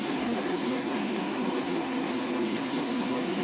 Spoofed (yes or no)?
yes